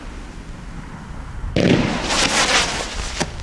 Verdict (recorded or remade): recorded